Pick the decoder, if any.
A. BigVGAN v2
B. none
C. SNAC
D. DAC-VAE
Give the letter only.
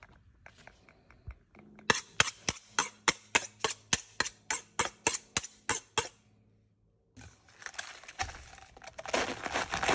B